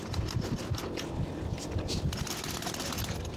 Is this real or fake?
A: real